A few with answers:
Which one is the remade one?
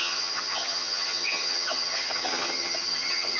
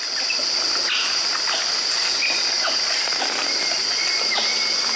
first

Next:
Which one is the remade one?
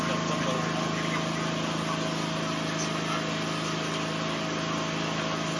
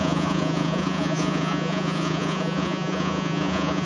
second